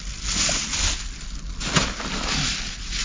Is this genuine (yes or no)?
yes